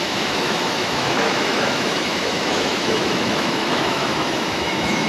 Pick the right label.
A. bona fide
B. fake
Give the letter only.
B